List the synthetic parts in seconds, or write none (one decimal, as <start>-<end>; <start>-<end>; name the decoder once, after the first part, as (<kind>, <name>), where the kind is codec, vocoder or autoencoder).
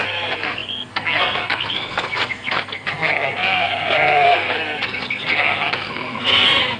0.0-6.8 (codec, SNAC)